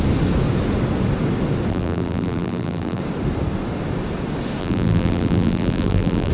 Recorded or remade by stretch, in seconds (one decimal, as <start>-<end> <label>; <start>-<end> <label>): 0.0-1.7 recorded; 1.7-3.0 remade; 3.0-4.6 recorded; 4.6-6.3 remade